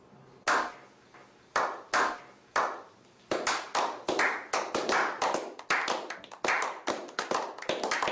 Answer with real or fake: real